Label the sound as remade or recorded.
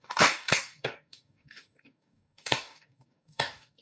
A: remade